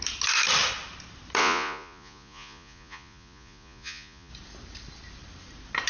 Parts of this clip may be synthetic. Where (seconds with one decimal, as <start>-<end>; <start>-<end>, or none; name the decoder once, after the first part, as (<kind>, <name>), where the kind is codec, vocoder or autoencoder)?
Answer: 1.4-4.3 (vocoder, Vocos)